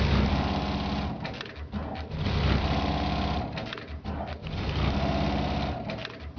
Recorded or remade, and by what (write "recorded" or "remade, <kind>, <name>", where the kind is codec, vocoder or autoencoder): recorded